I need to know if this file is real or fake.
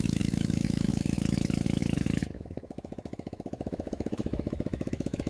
fake